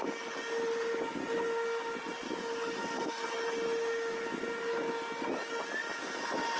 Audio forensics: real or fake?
real